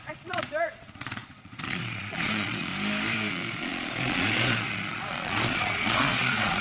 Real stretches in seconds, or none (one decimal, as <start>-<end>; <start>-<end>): 2.7-3.3